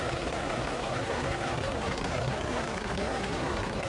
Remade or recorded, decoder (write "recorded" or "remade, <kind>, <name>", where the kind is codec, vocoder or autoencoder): remade, codec, SNAC